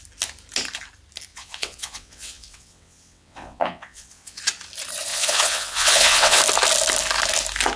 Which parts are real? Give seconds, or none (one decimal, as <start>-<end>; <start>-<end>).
0.0-1.3; 4.4-5.1; 6.4-7.8